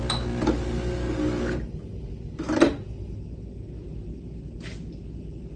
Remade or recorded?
recorded